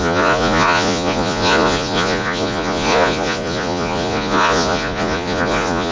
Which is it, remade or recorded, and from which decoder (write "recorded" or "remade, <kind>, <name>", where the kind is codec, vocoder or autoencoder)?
remade, vocoder, Vocos